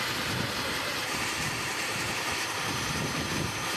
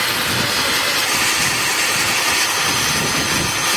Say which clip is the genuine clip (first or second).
second